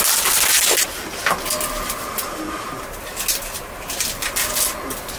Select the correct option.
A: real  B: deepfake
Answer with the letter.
A